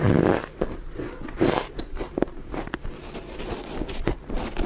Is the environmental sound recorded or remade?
recorded